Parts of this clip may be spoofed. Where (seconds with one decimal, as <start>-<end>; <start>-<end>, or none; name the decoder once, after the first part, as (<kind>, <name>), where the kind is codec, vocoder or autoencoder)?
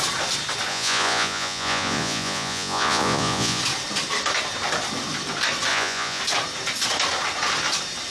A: 0.7-3.6 (vocoder, Vocos); 5.7-6.2